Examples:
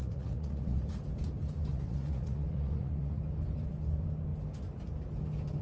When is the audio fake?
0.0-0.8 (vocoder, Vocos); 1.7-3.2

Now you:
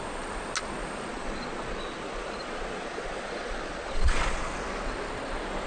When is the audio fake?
1.1-4.5 (vocoder, Vocos)

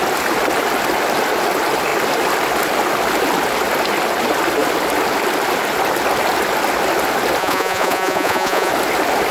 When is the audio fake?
7.4-8.7 (vocoder, Vocos)